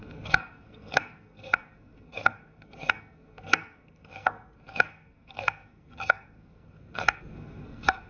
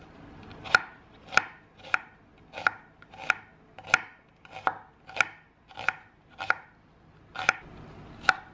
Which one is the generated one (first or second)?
first